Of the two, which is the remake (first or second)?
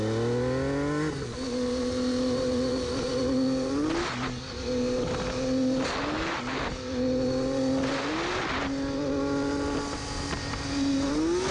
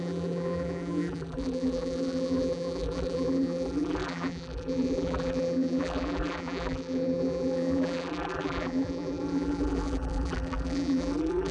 second